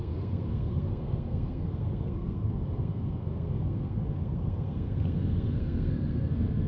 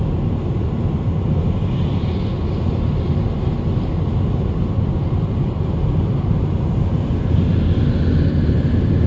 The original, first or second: second